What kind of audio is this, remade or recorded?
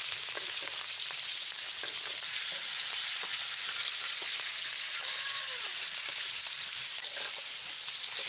remade